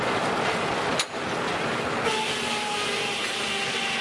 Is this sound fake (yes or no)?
no